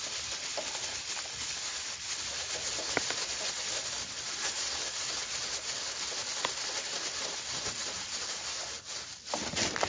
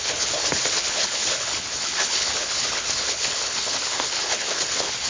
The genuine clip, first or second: first